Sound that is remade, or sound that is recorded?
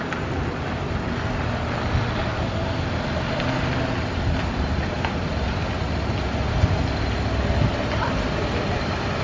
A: recorded